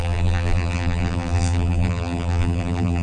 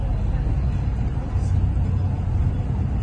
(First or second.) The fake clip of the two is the first